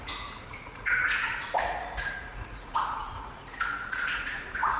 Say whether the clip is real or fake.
fake